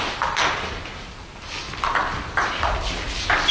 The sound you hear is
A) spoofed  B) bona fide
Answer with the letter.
B